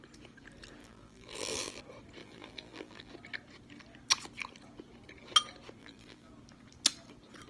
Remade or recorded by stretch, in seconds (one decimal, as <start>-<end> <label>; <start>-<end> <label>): 0.0-0.8 recorded; 0.8-1.8 remade; 1.8-2.2 recorded; 2.2-3.1 remade; 3.1-5.8 recorded; 5.8-6.3 remade; 6.3-7.5 recorded